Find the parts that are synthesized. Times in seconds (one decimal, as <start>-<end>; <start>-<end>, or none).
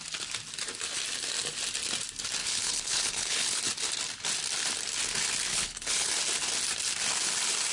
2.4-3.6; 5.5-6.1